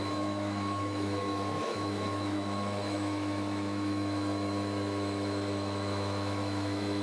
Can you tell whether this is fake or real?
fake